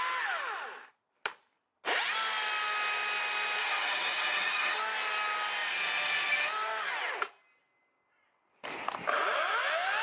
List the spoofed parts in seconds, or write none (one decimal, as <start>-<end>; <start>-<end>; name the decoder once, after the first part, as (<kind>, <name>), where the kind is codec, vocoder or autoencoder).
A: 3.6-4.8 (vocoder, HiFi-GAN)